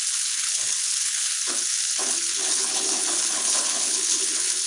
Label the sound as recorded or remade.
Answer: remade